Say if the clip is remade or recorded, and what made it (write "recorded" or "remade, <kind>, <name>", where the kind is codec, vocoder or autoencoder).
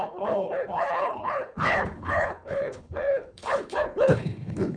remade, codec, HILCodec